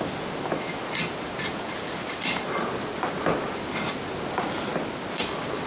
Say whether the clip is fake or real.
real